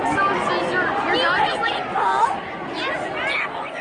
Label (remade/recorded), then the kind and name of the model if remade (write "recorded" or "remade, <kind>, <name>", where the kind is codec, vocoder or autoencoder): recorded